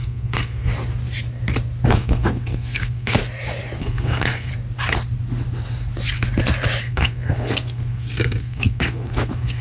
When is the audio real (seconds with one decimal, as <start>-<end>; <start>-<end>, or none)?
0.7-1.9; 3.2-3.8; 4.5-6.8